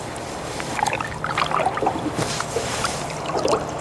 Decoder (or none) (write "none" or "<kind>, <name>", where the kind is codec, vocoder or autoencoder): vocoder, BigVGAN v2